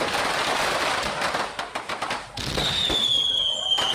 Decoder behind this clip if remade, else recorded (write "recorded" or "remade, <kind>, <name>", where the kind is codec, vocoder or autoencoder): recorded